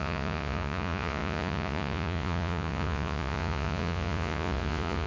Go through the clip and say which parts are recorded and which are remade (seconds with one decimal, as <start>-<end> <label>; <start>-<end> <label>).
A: 0.0-5.1 remade